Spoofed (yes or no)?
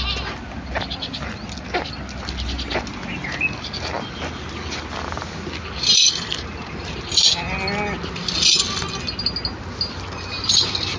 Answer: no